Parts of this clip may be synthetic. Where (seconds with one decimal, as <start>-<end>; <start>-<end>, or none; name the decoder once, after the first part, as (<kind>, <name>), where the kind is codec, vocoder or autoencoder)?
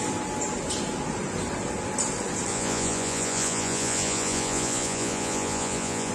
2.5-6.1 (vocoder, Vocos)